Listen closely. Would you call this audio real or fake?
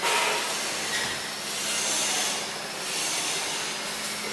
real